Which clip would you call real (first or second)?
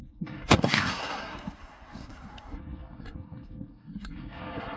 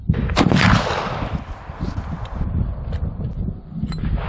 second